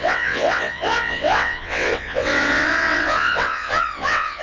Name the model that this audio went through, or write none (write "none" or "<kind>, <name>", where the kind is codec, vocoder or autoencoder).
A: vocoder, WaveNeXt